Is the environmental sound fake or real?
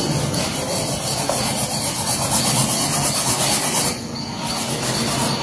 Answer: real